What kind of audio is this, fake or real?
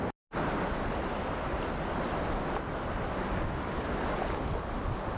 real